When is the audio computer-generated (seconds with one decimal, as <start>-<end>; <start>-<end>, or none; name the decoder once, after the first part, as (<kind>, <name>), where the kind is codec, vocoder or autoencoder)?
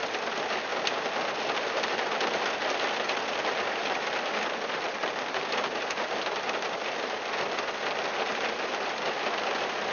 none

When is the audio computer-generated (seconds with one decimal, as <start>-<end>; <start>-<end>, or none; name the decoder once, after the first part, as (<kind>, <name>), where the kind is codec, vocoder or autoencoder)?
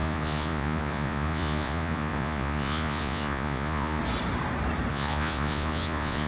0.0-4.0 (vocoder, Vocos); 4.9-6.3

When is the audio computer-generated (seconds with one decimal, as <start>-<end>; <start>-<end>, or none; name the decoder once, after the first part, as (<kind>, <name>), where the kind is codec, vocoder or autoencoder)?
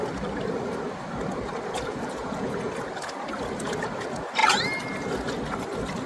2.2-2.7 (vocoder, Vocos)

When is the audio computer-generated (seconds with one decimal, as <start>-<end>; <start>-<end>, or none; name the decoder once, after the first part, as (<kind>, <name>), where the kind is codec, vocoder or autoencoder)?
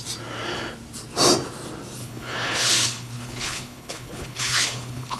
2.0-5.2 (codec, HILCodec)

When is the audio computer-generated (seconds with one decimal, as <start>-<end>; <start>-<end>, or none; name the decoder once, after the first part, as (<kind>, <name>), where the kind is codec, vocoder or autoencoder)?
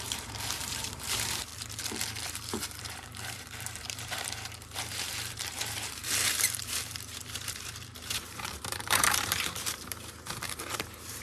0.0-1.5 (vocoder, BigVGAN v2); 2.3-11.2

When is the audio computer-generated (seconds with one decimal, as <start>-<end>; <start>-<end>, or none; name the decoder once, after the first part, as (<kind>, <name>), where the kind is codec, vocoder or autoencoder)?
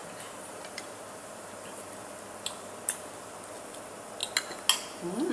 0.0-3.2 (vocoder, BigVGAN v2)